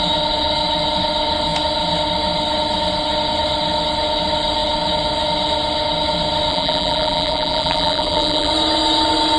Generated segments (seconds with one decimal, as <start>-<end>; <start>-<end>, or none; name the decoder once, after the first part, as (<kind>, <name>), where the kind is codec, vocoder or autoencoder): 6.5-8.5 (vocoder, BigVGAN v2)